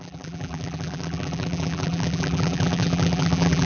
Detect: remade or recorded remade